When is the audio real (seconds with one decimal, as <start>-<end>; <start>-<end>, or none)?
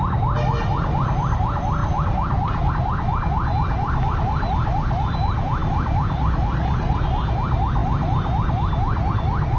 0.0-9.6